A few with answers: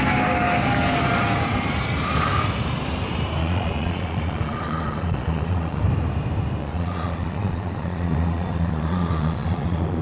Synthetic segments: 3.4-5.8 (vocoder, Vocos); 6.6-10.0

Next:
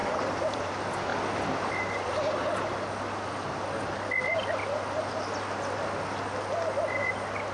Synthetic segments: 0.0-0.7 (vocoder, BigVGAN v2)

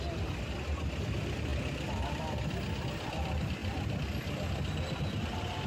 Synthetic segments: none

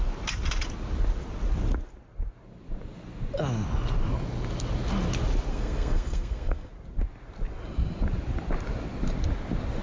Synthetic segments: 5.5-6.7 (codec, SNAC)